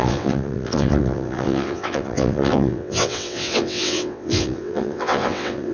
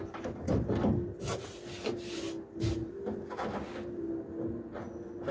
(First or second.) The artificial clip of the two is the first